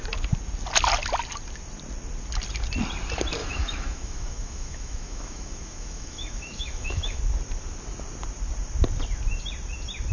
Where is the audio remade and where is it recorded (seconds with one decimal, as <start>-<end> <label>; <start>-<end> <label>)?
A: 0.0-3.4 recorded; 3.4-7.2 remade; 7.2-10.1 recorded